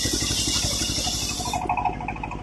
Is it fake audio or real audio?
real